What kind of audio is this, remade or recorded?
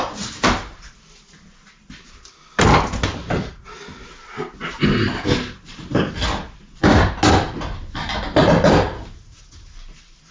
recorded